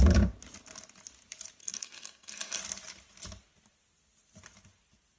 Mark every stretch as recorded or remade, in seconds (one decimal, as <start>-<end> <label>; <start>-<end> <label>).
0.0-1.6 recorded; 1.6-2.6 remade; 2.6-5.2 recorded